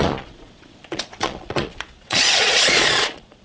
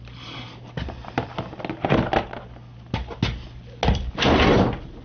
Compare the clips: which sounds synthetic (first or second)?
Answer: first